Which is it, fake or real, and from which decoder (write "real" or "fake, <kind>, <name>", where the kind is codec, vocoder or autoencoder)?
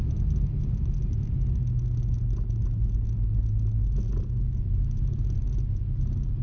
real